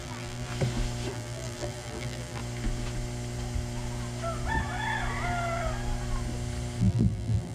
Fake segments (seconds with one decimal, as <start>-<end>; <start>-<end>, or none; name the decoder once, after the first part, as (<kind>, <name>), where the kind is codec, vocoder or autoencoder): 0.0-0.5 (vocoder, BigVGAN v2); 1.1-2.4; 6.8-7.5